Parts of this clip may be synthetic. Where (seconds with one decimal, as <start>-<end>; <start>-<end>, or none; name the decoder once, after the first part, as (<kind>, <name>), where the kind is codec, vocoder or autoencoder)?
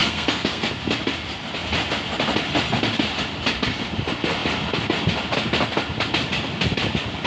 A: 0.0-0.7 (codec, SNAC)